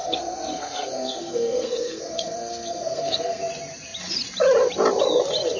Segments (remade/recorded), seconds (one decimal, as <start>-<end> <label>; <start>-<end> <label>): 0.0-3.4 remade; 3.4-5.6 recorded

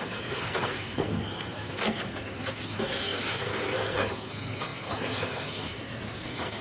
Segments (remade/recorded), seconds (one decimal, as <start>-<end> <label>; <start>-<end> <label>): 0.0-6.6 remade

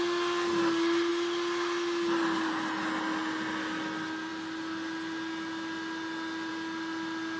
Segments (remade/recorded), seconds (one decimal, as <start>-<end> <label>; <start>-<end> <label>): 0.0-7.4 recorded